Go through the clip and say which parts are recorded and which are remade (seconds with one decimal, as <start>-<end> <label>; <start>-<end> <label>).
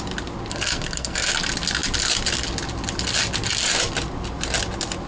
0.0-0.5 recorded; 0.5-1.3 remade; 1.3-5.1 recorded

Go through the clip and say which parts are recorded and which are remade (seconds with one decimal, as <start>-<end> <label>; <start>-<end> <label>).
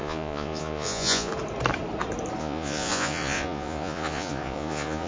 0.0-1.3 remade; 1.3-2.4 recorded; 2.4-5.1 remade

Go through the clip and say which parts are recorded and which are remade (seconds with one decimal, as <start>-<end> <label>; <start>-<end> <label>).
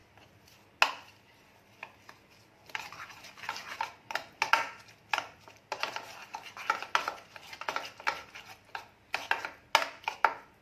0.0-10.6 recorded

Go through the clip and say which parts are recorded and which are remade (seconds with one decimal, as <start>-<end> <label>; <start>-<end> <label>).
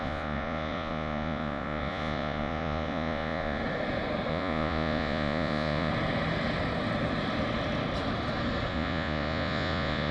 0.0-3.6 remade; 3.6-4.3 recorded; 4.3-5.9 remade; 5.9-8.7 recorded; 8.7-10.1 remade